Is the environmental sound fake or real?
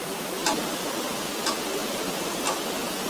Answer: real